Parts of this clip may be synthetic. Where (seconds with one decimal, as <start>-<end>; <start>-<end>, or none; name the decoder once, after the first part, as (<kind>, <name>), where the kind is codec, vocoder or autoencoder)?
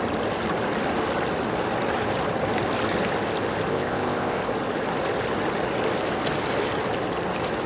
3.7-4.4 (codec, ZipCodec)